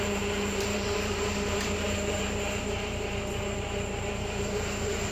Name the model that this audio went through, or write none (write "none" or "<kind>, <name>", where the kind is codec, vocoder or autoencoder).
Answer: vocoder, BigVGAN v2